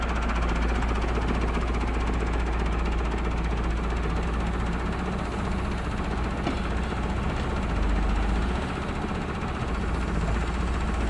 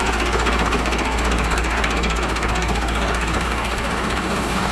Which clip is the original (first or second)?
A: first